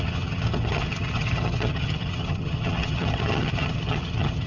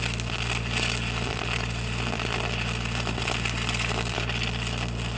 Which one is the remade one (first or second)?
first